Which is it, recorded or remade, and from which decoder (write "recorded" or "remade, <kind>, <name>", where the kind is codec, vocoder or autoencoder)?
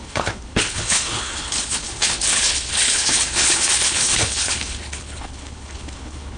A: remade, codec, HILCodec